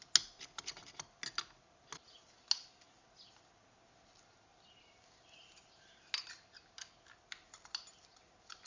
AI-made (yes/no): no